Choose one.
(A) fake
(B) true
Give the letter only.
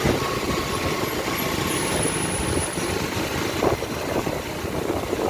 B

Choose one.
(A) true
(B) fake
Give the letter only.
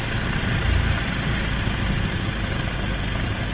A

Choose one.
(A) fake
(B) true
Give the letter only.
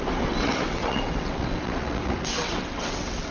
A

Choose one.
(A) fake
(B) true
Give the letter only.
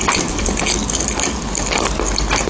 B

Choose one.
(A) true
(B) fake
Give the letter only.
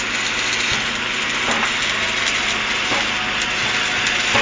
A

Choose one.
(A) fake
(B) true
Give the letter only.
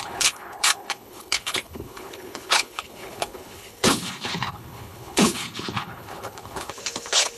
A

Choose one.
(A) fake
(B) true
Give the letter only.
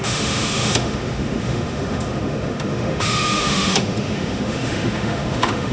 A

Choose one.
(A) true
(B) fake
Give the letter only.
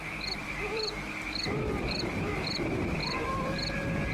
B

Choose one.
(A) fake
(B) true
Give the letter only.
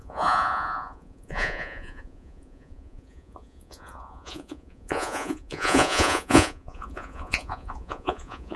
A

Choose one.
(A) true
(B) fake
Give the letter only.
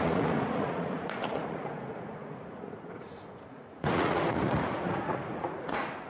B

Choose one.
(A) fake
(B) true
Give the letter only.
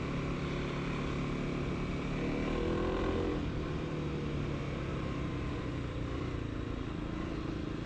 B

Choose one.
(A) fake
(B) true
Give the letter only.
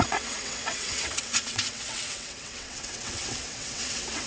A